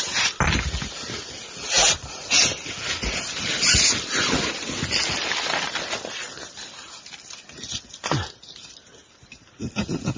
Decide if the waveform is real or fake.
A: real